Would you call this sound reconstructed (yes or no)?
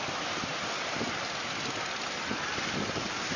no